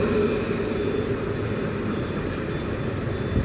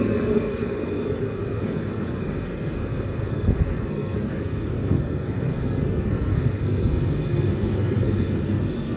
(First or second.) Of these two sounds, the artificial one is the second